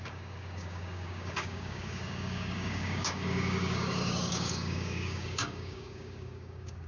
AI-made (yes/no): yes